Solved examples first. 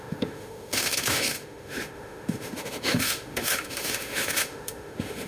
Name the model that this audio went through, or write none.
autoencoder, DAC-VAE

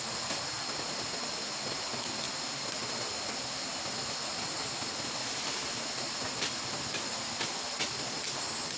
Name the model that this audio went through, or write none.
none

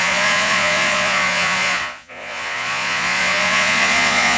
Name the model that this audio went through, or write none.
vocoder, Vocos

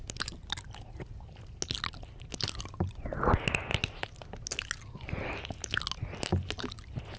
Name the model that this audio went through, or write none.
none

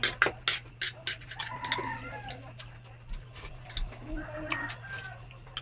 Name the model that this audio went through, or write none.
none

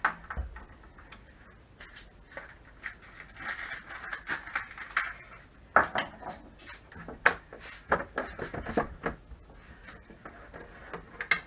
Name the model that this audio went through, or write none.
none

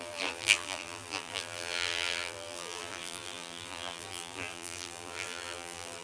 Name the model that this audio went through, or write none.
vocoder, BigVGAN v2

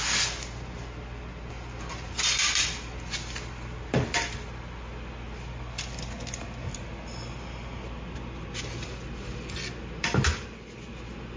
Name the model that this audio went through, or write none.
none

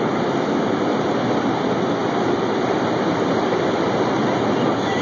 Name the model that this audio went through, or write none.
none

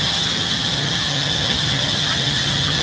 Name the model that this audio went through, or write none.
vocoder, HiFi-GAN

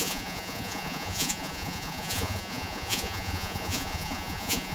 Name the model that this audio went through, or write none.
vocoder, Vocos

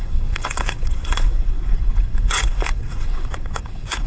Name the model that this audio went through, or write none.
vocoder, WaveNeXt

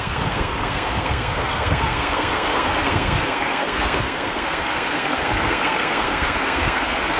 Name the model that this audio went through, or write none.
codec, SNAC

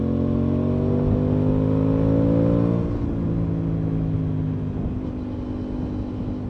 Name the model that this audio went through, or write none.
none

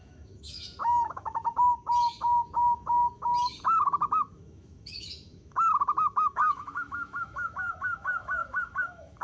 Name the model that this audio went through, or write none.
autoencoder, DAC-VAE